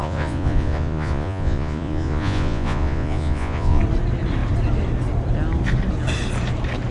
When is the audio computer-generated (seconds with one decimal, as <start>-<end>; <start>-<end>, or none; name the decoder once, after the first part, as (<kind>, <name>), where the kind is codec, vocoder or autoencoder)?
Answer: 0.0-3.8 (vocoder, Vocos)